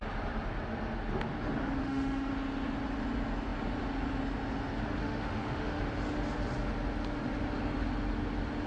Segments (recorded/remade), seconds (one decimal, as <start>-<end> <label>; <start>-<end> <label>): 0.0-1.8 recorded; 1.8-2.3 remade; 2.3-5.0 recorded; 5.0-5.8 remade; 5.8-8.7 recorded